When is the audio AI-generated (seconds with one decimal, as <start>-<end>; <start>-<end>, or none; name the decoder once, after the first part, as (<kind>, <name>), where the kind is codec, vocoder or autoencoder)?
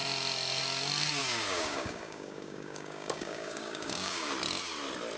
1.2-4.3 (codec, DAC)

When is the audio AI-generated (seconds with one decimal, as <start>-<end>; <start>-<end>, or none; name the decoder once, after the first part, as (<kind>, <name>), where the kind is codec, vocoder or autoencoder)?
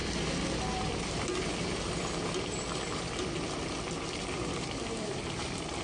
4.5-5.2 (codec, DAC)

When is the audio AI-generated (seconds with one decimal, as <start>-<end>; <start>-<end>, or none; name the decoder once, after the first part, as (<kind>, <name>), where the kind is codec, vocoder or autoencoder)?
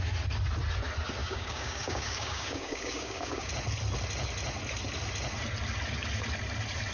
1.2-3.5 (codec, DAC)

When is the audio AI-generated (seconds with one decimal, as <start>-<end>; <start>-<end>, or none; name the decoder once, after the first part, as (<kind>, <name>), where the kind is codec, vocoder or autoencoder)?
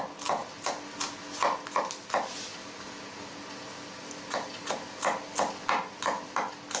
none